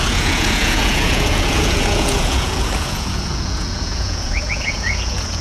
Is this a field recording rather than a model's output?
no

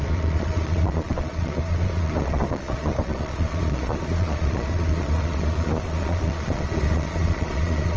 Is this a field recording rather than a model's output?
no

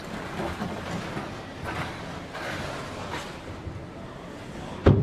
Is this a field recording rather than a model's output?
yes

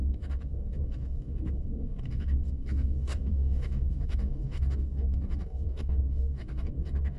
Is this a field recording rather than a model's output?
no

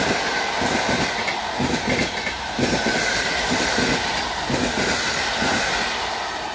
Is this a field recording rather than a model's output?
yes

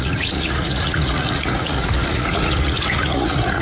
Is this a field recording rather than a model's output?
no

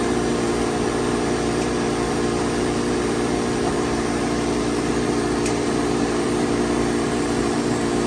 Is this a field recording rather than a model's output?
no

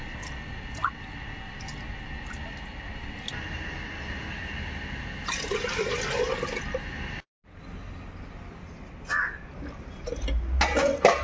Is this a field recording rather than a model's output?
yes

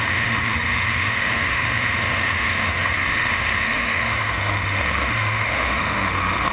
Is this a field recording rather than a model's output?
no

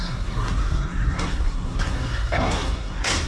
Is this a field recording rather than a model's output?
no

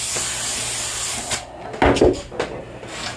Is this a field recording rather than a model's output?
yes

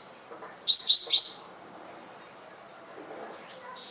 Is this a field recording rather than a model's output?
yes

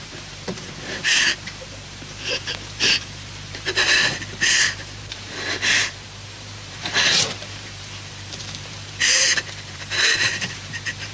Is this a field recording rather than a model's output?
no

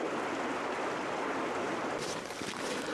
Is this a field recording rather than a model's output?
yes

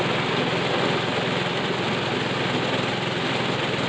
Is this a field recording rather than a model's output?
yes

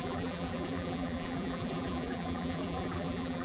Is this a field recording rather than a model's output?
no